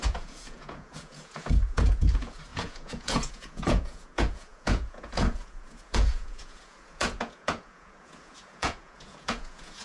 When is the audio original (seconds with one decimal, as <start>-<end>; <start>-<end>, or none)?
none